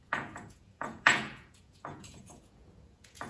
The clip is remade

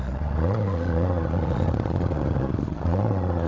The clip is remade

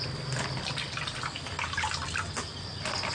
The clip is recorded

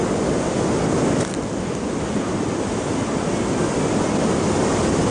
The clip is recorded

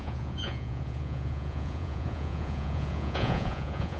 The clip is remade